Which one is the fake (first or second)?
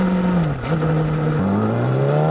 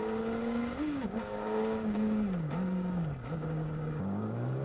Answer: second